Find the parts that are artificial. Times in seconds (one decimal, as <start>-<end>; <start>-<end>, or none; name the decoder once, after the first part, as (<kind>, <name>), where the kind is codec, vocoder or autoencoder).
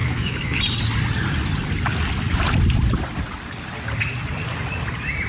0.0-0.6 (autoencoder, DAC-VAE)